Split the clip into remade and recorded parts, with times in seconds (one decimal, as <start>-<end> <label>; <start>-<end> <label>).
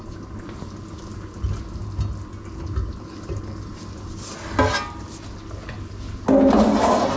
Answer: 0.0-7.2 recorded